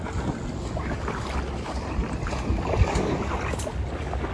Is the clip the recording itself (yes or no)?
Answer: yes